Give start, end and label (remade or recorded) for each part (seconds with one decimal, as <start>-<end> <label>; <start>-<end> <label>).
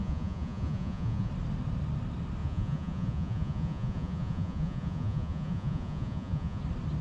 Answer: 0.0-1.3 remade; 1.3-2.4 recorded; 2.4-6.6 remade; 6.6-7.0 recorded